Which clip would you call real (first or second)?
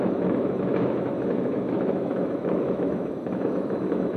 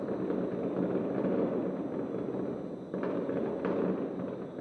second